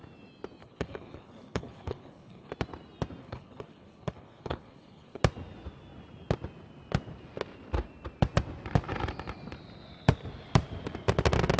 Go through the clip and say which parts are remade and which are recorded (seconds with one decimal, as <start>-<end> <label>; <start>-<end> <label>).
0.0-0.6 recorded; 0.6-2.5 remade; 2.5-3.2 recorded; 3.2-5.2 remade; 5.2-11.6 recorded